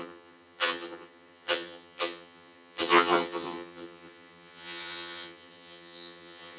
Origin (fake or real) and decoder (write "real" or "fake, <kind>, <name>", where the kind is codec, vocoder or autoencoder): fake, vocoder, HiFi-GAN